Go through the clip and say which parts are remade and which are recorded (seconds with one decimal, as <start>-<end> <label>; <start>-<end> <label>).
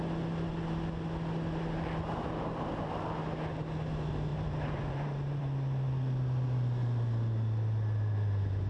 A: 0.0-4.3 recorded; 4.3-5.4 remade; 5.4-8.7 recorded